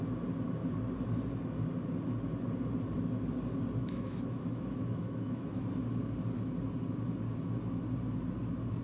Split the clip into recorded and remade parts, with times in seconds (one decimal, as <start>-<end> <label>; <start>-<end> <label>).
0.0-3.8 recorded; 3.8-5.7 remade; 5.7-8.8 recorded